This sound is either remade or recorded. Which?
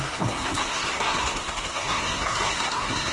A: remade